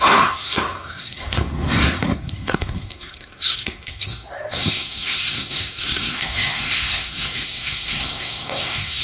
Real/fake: fake